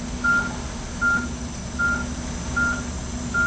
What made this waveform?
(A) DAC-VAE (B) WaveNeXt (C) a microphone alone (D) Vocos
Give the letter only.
C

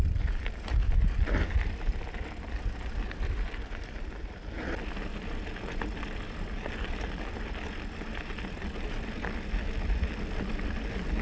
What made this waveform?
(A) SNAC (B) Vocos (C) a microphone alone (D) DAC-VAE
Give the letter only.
C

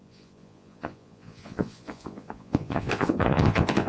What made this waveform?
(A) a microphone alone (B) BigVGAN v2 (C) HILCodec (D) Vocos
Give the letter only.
D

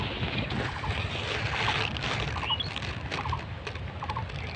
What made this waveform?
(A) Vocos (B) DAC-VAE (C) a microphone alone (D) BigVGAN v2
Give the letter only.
C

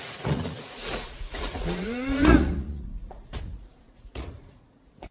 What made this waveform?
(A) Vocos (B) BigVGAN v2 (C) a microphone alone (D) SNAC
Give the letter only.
A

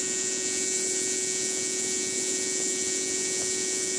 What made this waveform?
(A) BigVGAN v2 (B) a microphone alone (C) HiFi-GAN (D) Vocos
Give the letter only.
D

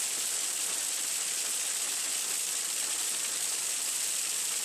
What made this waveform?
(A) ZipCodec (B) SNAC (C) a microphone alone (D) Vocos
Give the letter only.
C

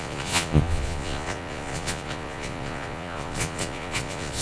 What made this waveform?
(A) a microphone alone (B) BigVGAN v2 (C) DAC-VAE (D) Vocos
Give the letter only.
D